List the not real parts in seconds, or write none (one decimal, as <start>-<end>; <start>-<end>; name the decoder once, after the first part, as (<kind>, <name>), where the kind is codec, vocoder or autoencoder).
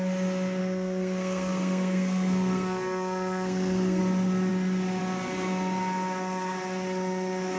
0.6-4.0 (codec, SNAC)